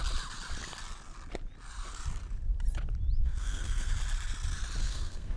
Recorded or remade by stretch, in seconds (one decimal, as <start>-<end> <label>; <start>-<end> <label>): 0.0-3.2 recorded; 3.2-3.9 remade; 3.9-4.8 recorded; 4.8-5.4 remade